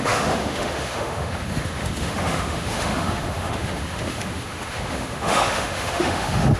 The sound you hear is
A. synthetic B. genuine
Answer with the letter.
A